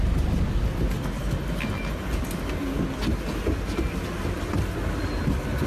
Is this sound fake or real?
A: real